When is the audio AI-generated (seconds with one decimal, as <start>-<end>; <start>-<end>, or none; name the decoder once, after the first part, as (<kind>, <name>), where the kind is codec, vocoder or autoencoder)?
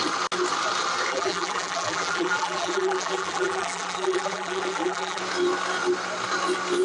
1.1-5.2 (vocoder, BigVGAN v2)